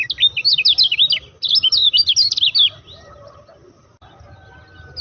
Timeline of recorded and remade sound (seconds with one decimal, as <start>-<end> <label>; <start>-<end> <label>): 0.0-5.0 recorded